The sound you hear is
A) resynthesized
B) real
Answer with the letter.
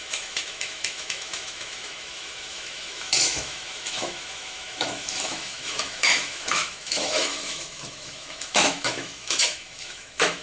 A